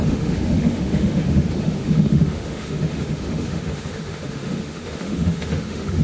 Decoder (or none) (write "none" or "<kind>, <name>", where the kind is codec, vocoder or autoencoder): autoencoder, DAC-VAE